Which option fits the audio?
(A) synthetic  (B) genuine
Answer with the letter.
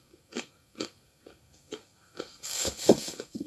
A